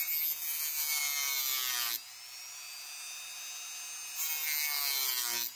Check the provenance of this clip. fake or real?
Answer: real